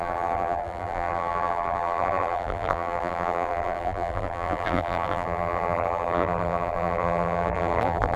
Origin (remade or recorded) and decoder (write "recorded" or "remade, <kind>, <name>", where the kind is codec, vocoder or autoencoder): remade, vocoder, BigVGAN v2